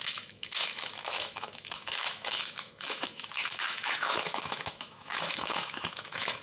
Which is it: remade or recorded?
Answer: remade